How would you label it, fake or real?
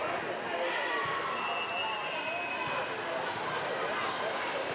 real